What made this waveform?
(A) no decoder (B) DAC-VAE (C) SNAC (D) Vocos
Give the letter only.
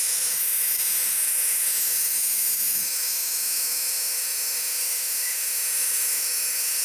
B